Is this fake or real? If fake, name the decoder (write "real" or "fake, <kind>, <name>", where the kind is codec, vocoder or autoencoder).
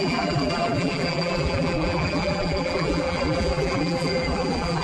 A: fake, vocoder, BigVGAN v2